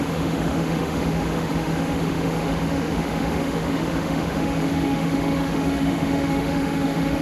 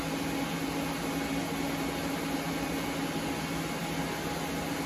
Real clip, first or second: second